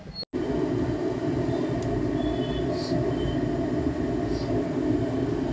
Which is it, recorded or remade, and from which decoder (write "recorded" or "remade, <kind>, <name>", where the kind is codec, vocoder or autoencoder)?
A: recorded